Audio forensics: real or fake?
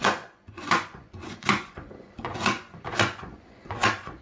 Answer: fake